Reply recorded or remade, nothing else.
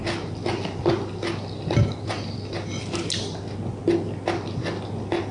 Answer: recorded